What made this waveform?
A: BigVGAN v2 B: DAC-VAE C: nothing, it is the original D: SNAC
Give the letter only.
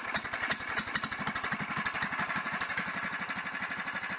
C